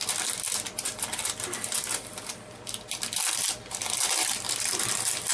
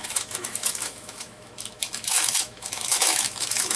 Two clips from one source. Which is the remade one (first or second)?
second